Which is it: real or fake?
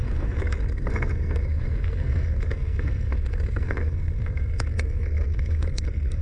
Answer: fake